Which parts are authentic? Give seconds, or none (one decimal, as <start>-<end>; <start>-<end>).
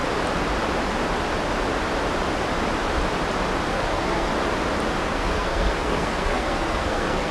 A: 0.0-3.7; 4.3-5.0